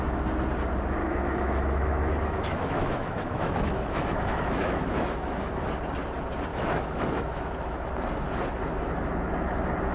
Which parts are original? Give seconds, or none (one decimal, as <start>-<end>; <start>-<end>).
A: 0.0-1.0; 5.5-6.5; 7.9-9.9